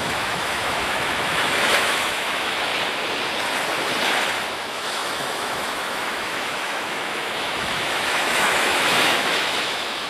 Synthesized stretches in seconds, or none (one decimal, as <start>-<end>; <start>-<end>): 0.0-2.7; 4.5-10.1

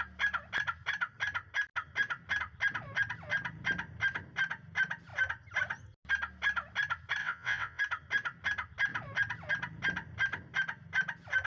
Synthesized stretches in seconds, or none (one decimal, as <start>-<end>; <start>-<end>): 7.2-7.8

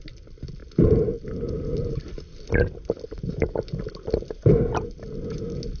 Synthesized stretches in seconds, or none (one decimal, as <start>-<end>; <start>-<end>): none

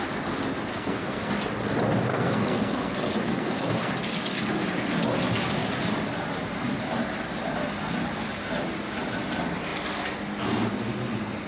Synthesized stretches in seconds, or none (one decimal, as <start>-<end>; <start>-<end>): 0.7-1.3; 2.1-3.9

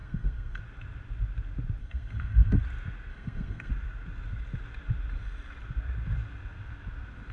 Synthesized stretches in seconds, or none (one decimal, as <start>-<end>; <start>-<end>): 0.0-0.6; 1.8-2.6; 3.1-3.7

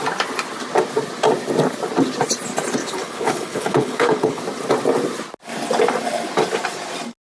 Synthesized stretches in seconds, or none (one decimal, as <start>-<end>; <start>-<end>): 2.8-4.4

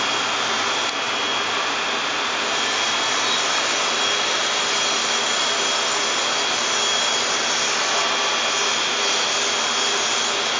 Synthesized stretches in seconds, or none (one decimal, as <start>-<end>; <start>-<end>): none